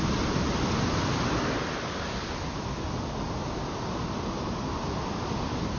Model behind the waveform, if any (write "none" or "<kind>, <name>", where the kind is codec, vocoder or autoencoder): none